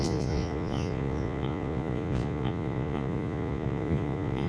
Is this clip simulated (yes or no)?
yes